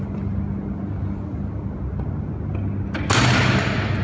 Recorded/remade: recorded